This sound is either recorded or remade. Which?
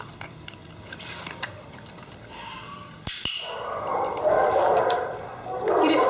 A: remade